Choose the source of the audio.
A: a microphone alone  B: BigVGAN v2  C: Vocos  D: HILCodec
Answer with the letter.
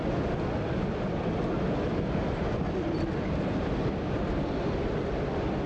A